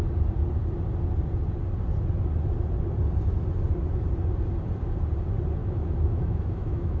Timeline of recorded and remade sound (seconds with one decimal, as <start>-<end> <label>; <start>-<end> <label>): 0.0-5.6 recorded; 5.6-7.0 remade